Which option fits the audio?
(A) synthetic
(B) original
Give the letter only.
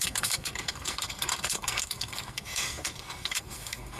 A